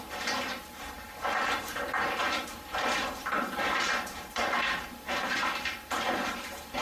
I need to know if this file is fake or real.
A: fake